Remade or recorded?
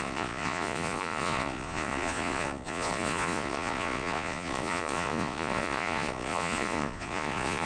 remade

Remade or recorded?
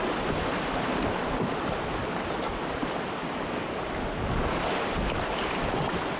recorded